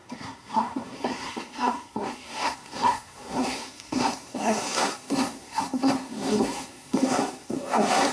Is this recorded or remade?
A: remade